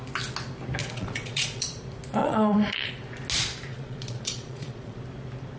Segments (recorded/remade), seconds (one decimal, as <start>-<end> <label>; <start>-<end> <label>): 0.0-0.8 recorded; 0.8-1.8 remade; 1.8-2.2 recorded; 2.2-2.9 remade; 2.9-3.7 recorded; 3.7-5.0 remade; 5.0-5.6 recorded